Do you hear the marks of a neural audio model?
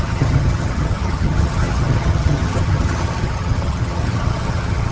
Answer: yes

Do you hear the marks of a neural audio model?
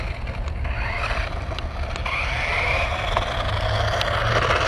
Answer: no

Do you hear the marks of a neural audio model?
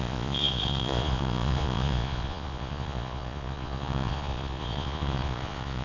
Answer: yes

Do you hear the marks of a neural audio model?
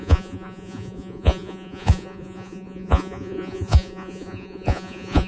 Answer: yes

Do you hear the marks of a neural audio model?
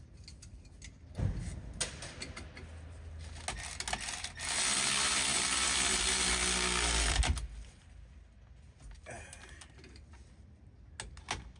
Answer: no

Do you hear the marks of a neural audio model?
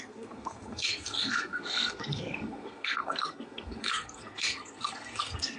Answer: yes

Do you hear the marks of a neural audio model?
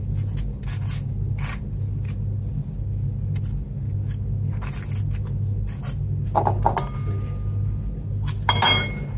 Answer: no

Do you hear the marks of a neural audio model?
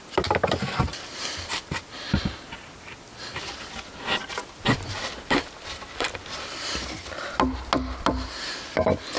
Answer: no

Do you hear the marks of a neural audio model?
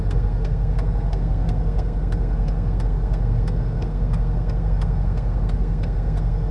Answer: yes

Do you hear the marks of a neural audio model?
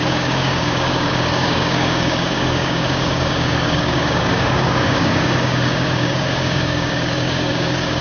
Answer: yes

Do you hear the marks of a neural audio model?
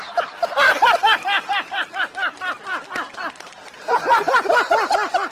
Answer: no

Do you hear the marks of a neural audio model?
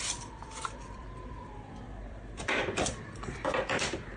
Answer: yes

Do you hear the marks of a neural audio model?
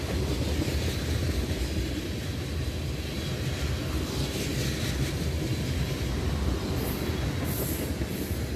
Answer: no